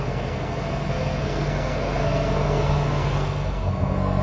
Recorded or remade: remade